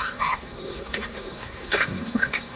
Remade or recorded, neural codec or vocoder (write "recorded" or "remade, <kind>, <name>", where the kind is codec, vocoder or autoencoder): remade, codec, SNAC